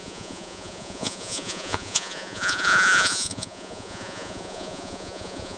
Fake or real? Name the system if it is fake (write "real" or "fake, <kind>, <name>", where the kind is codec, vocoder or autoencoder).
fake, vocoder, Vocos